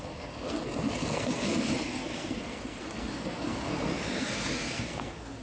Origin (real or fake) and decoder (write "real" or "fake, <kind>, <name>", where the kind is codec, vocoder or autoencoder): fake, codec, SNAC